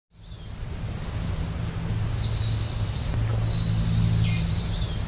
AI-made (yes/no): no